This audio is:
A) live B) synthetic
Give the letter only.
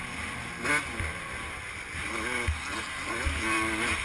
A